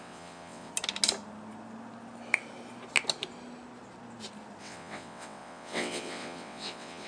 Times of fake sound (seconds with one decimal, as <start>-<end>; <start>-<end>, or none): 0.0-0.7; 4.6-7.1